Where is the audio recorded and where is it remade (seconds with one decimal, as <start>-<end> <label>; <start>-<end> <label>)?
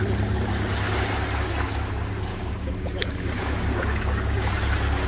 0.0-2.3 recorded; 2.3-4.5 remade; 4.5-5.1 recorded